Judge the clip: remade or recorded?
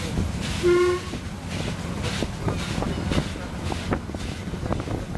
recorded